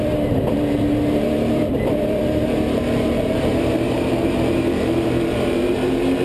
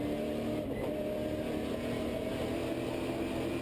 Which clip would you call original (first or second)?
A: second